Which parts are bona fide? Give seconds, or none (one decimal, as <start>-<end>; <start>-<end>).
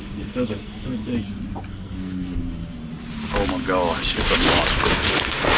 1.1-1.7; 2.4-4.8